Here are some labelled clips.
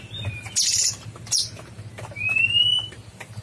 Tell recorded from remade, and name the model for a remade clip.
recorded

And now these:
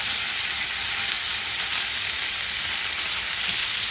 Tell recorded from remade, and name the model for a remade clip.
remade, vocoder, BigVGAN v2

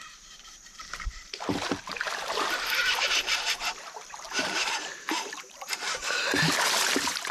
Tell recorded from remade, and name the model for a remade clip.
remade, vocoder, BigVGAN v2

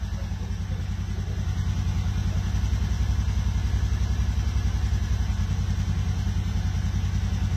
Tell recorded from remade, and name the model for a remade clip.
recorded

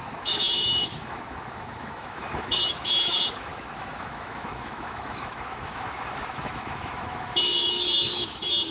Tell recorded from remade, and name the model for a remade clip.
remade, autoencoder, DAC-VAE